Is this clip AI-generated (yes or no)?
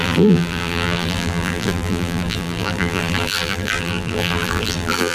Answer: yes